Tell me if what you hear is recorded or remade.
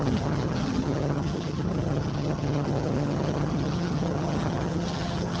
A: remade